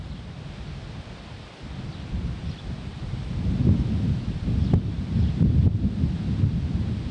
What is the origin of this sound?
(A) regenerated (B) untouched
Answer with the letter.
B